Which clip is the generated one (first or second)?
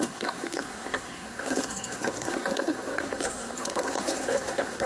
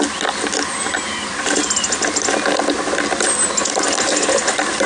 first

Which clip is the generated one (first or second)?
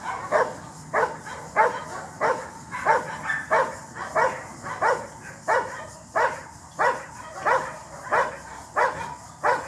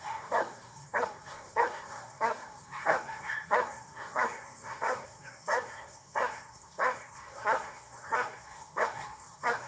second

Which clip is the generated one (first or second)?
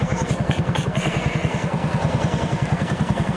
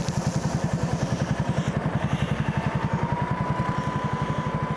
first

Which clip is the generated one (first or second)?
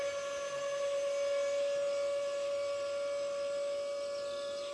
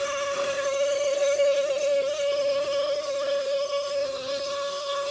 second